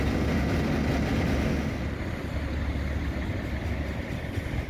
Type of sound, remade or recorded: recorded